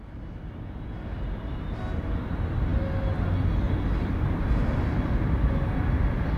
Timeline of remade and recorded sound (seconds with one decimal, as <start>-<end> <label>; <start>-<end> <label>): 0.0-6.4 recorded